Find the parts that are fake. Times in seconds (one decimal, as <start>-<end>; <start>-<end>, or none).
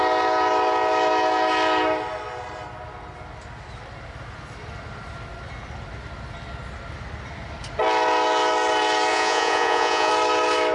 9.1-10.1